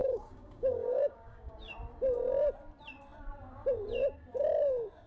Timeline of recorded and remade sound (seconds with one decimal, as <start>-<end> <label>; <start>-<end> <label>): 0.0-1.7 remade; 1.7-5.1 recorded